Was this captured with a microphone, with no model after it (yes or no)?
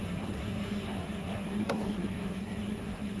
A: no